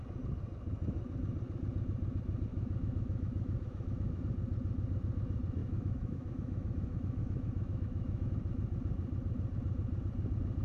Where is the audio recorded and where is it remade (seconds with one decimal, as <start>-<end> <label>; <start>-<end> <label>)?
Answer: 0.0-2.5 recorded; 2.5-4.2 remade; 4.2-5.6 recorded; 5.6-8.3 remade; 8.3-10.6 recorded